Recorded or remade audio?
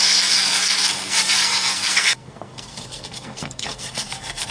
remade